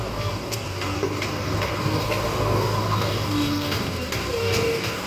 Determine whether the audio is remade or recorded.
remade